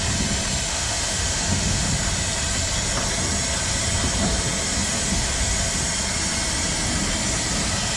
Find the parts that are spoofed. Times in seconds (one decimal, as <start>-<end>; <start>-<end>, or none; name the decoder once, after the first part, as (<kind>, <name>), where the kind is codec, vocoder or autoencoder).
0.7-1.9 (autoencoder, DAC-VAE)